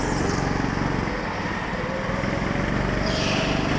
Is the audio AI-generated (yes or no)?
no